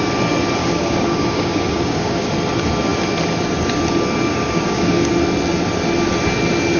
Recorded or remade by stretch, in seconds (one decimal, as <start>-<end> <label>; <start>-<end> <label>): 0.0-0.6 recorded; 0.6-2.3 remade; 2.3-4.3 recorded; 4.3-5.1 remade; 5.1-6.8 recorded